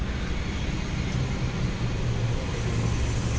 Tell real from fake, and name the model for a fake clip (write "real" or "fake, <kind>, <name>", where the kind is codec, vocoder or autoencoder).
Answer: real